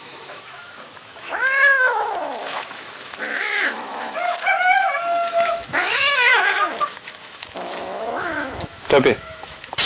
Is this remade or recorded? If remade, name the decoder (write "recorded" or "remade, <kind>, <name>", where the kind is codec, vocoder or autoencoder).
remade, autoencoder, DAC-VAE